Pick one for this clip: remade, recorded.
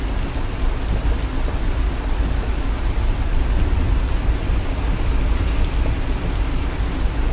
recorded